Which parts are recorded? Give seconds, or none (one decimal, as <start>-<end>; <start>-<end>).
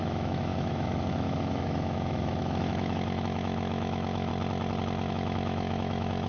4.3-5.1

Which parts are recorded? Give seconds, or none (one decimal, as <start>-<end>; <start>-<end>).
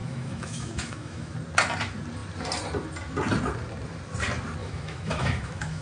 1.3-4.6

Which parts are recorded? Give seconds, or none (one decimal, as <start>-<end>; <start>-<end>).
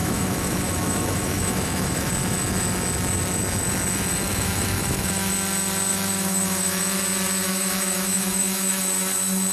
2.1-4.3; 5.3-5.9; 6.8-7.4; 8.8-9.5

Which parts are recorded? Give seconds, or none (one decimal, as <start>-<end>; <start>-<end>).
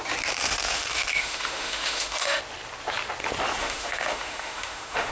0.0-0.4; 2.4-3.6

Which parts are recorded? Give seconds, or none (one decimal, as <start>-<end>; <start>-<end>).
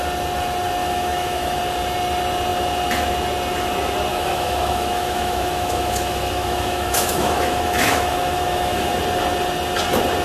0.0-0.8; 1.6-4.1; 9.0-10.2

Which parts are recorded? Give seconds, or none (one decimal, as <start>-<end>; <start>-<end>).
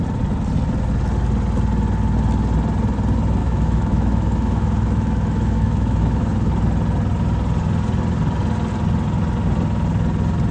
0.0-3.4; 6.5-10.5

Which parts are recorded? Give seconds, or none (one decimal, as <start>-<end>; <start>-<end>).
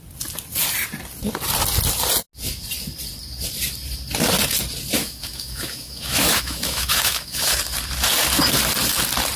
0.0-5.0; 7.6-9.4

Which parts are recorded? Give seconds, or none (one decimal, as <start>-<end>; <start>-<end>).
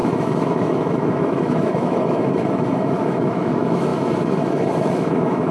none